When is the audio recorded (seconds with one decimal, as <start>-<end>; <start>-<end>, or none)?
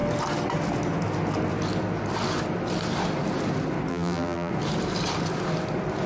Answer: 0.0-3.9; 4.5-6.1